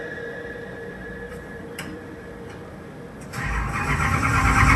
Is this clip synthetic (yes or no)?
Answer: yes